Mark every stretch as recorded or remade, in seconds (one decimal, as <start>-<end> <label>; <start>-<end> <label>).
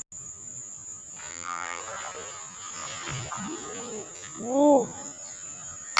0.0-1.3 recorded; 1.3-1.8 remade; 1.8-6.0 recorded